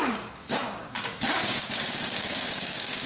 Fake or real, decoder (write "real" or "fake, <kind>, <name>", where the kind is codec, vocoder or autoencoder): fake, codec, DAC